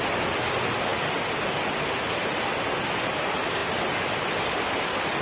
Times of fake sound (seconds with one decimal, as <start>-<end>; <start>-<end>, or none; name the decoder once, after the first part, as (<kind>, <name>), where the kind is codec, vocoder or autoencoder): none